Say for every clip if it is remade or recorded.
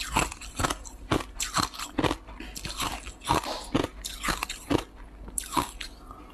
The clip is recorded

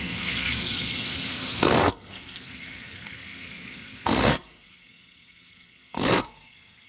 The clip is remade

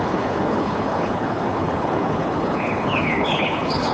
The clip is remade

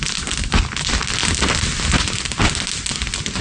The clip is recorded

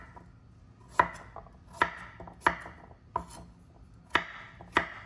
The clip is recorded